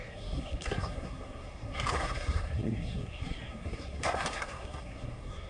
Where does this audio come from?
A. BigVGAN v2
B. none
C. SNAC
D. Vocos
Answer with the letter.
C